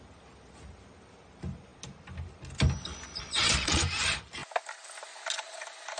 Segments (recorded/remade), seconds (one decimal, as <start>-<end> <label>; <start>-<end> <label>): 0.0-3.3 recorded; 3.3-3.8 remade; 3.8-6.0 recorded